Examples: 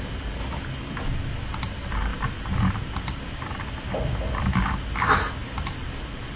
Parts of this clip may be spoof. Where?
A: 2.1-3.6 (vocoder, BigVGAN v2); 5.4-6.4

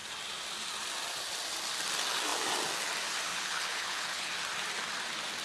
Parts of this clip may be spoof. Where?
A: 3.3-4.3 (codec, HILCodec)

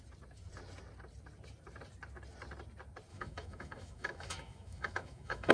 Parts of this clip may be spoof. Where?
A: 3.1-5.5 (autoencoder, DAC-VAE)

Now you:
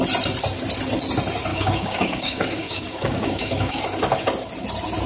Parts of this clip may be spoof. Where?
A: 1.5-3.8 (codec, DAC)

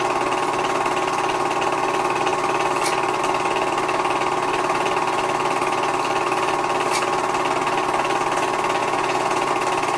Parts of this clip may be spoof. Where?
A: 8.8-9.5 (vocoder, Vocos)

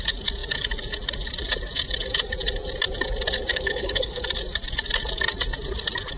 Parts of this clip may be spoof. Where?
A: 3.5-4.2 (codec, HILCodec)

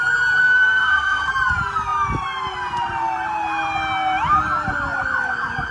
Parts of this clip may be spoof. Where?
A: 0.4-1.3 (codec, SNAC)